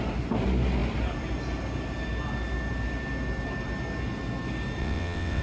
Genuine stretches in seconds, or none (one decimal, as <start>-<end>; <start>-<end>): 0.0-4.8